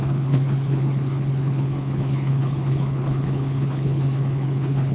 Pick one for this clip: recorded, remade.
remade